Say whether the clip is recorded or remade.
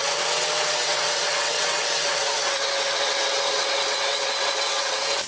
remade